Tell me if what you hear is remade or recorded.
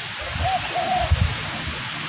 recorded